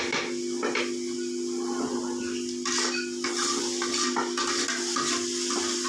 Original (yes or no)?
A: yes